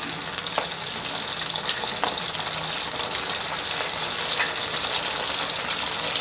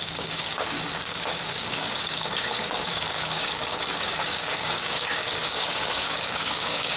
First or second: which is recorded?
first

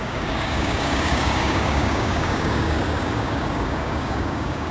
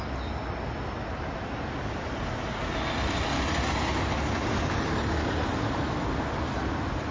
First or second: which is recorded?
second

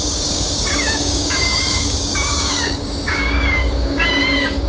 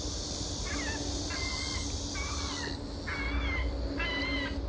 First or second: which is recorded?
second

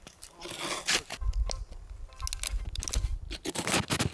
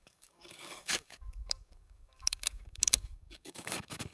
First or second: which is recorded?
first